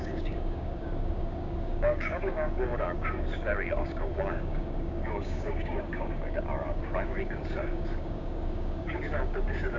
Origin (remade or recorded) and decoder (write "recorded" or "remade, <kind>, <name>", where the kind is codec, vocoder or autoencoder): remade, codec, DAC